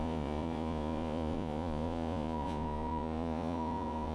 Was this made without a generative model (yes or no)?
no